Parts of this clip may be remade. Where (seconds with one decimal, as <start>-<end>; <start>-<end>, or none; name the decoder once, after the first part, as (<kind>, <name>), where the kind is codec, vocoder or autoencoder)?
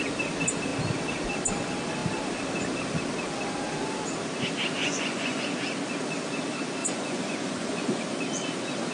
4.8-5.4 (vocoder, Vocos); 6.8-8.0